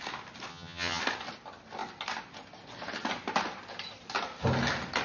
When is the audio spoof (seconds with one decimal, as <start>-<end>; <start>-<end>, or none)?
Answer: 0.5-1.0